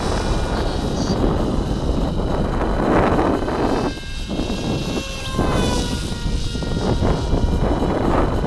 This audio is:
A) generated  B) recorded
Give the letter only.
B